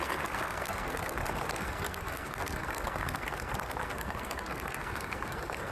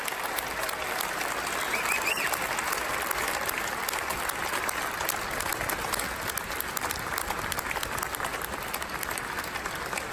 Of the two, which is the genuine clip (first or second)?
second